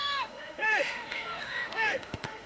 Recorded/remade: remade